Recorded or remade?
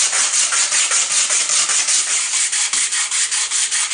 recorded